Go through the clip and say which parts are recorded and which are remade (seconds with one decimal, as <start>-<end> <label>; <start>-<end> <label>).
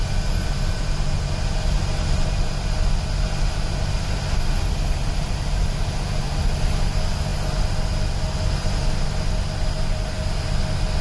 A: 0.0-11.0 recorded